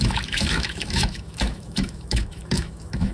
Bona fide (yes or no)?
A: no